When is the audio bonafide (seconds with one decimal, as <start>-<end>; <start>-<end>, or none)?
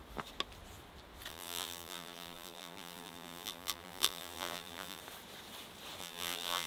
0.0-1.3; 5.0-6.0